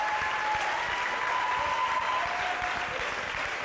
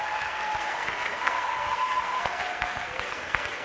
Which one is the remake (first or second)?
second